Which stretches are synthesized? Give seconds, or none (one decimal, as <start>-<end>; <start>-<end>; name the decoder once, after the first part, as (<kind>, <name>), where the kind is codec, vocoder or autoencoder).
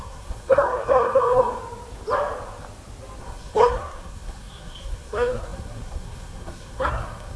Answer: 0.0-1.6 (codec, SNAC); 3.2-7.4